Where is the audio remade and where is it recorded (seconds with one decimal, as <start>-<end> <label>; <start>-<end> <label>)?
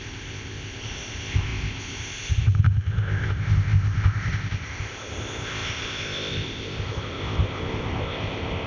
0.0-8.7 remade